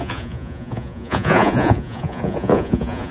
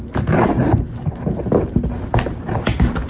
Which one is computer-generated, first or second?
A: first